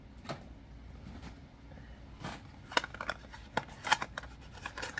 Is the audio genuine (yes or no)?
yes